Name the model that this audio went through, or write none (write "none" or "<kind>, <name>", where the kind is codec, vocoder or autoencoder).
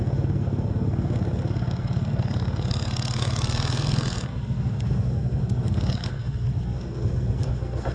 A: codec, SNAC